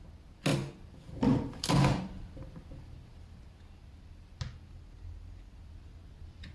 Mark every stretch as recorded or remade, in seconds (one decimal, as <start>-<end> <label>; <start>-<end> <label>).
0.0-6.5 recorded